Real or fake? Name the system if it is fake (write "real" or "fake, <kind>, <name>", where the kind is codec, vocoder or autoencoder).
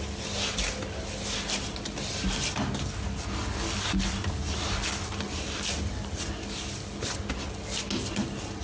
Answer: real